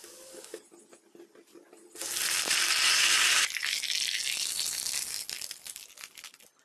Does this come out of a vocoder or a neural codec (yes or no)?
no